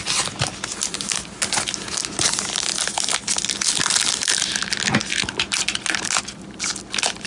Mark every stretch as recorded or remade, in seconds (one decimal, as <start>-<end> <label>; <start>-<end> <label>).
0.0-7.3 recorded